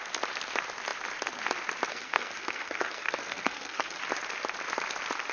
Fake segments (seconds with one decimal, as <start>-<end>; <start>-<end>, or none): 1.9-4.0